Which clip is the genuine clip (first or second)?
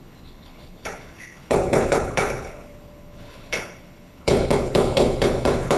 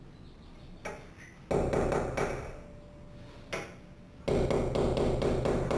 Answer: second